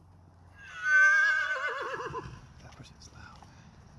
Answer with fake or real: real